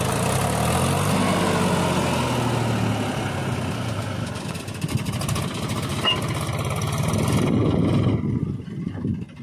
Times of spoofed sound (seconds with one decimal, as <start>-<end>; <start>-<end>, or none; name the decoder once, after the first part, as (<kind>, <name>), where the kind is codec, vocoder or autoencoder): 3.4-5.1 (vocoder, BigVGAN v2); 5.9-8.8